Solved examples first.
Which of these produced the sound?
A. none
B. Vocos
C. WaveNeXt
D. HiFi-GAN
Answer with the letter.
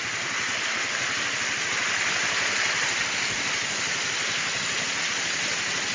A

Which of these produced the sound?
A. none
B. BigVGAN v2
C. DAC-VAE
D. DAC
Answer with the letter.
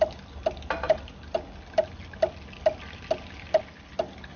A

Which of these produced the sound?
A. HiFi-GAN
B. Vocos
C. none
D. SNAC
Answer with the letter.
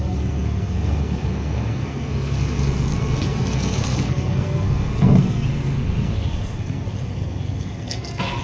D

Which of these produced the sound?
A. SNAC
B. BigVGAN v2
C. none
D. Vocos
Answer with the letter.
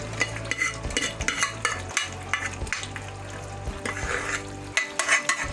C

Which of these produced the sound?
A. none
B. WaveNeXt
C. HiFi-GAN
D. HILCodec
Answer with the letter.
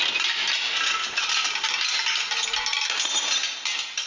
A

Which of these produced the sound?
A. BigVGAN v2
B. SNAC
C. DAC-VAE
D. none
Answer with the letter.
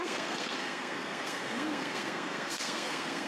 B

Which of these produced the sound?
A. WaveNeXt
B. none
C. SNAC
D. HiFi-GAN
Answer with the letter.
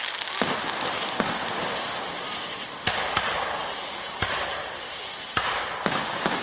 B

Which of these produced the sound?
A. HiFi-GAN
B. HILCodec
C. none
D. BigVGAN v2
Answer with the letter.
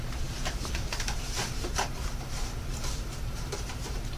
D